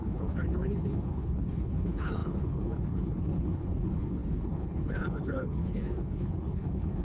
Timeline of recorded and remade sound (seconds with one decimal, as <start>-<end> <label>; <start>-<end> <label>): 0.0-7.0 remade